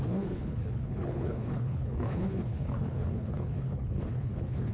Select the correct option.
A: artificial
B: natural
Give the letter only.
A